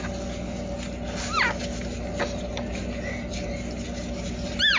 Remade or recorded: recorded